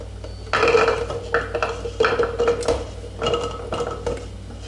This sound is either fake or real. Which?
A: real